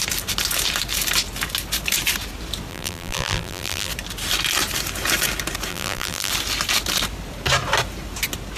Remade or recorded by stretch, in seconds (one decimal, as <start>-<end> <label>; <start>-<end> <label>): 0.0-2.7 recorded; 2.7-3.9 remade; 3.9-5.7 recorded; 5.7-6.3 remade; 6.3-8.6 recorded